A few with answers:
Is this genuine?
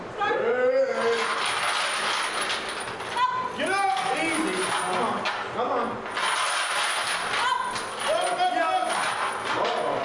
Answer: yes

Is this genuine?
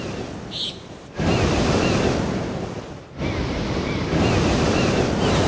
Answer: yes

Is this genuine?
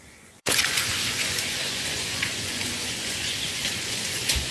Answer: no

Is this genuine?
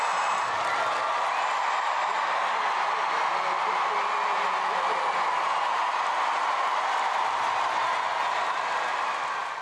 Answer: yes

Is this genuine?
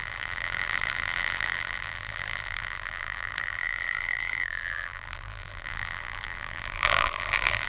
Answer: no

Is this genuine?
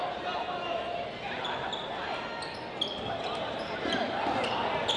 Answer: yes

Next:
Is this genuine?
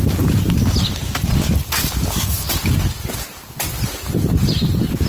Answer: yes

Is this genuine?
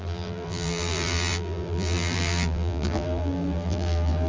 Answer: no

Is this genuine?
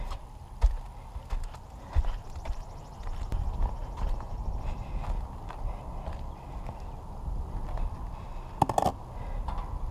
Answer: yes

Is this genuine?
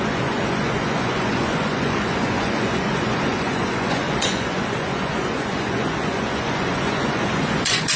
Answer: no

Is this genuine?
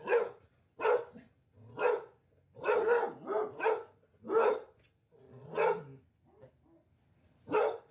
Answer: yes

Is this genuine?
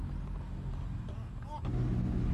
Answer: yes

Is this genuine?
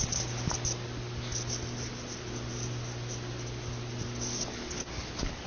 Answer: yes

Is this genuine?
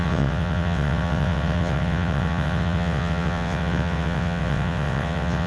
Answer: no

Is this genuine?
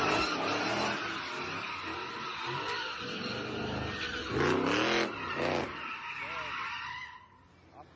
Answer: yes